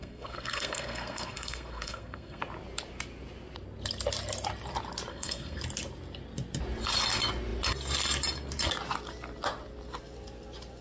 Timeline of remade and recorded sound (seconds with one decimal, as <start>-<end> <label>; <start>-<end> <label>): 0.0-2.4 remade; 2.4-5.1 recorded; 5.1-5.6 remade; 5.6-10.8 recorded